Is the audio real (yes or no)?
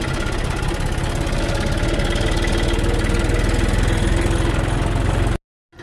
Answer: yes